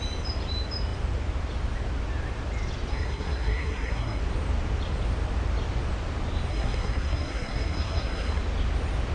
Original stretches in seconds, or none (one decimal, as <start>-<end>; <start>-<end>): 0.0-2.9; 4.2-6.5; 8.4-9.1